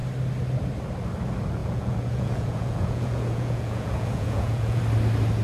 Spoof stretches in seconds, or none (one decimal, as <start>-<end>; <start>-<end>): 1.6-4.8

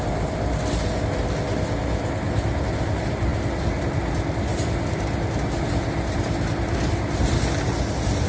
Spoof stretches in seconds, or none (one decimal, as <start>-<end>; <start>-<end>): none

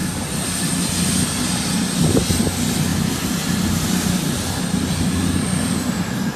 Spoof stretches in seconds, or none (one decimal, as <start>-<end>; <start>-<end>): none